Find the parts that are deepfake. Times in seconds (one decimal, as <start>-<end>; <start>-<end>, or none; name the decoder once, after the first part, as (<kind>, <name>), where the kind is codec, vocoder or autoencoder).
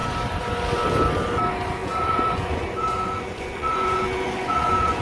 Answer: 1.8-5.0 (vocoder, Vocos)